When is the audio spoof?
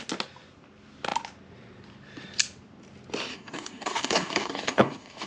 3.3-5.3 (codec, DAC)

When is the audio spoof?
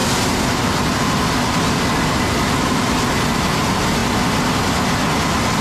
none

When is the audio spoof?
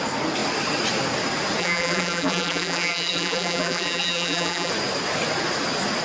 1.6-4.7 (vocoder, BigVGAN v2)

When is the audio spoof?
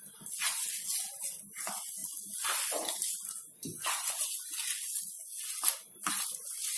none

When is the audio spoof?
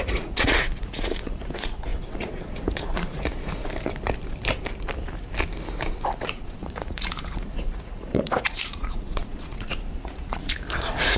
0.0-3.5 (vocoder, Vocos); 6.2-11.2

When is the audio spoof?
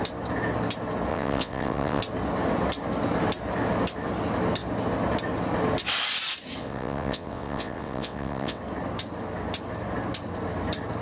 1.1-2.0 (vocoder, WaveNeXt); 6.6-8.6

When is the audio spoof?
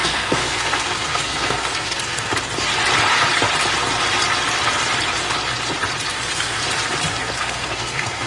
0.0-2.3 (codec, SNAC); 6.1-6.6; 7.1-8.3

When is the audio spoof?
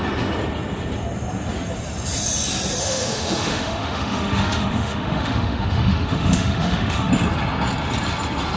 2.8-7.1 (autoencoder, DAC-VAE)